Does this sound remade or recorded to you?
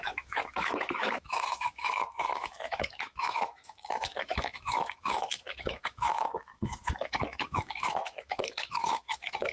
remade